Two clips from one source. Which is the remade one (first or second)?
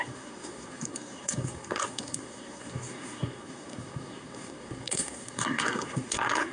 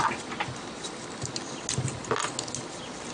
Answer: first